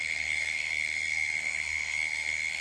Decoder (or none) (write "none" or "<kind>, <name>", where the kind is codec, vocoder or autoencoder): codec, SNAC